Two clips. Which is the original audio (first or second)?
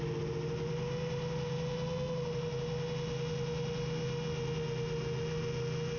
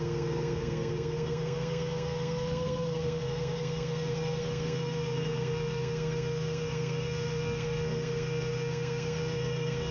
first